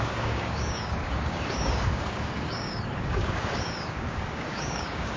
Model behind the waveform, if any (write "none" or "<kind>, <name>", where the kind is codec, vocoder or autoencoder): codec, DAC